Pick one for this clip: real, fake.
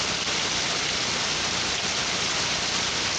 real